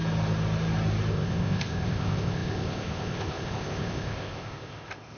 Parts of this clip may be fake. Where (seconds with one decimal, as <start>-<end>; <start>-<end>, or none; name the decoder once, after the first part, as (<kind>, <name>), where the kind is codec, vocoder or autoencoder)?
1.1-5.2 (codec, ZipCodec)